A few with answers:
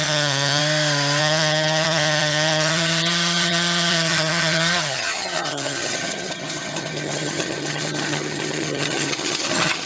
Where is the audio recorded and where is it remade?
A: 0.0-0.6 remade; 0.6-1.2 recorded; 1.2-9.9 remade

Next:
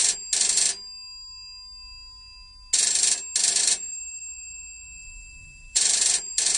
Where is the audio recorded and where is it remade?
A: 0.0-3.6 recorded; 3.6-6.6 remade

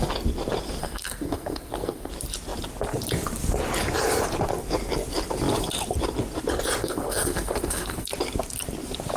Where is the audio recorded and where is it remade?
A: 0.0-0.8 recorded; 0.8-2.1 remade; 2.1-6.8 recorded; 6.8-8.1 remade; 8.1-9.2 recorded

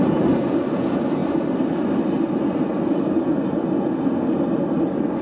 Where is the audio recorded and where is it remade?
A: 0.0-5.2 recorded

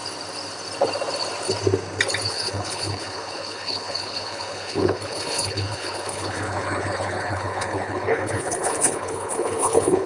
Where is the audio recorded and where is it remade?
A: 0.0-2.3 recorded; 2.3-10.1 remade

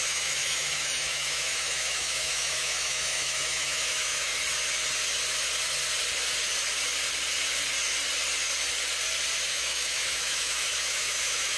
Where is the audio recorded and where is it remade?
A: 0.0-4.3 remade; 4.3-9.5 recorded; 9.5-11.6 remade